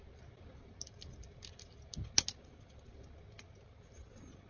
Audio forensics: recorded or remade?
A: recorded